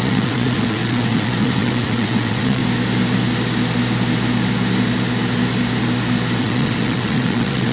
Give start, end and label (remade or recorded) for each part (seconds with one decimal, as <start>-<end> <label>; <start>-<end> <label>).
0.0-2.6 remade; 2.6-6.4 recorded; 6.4-7.7 remade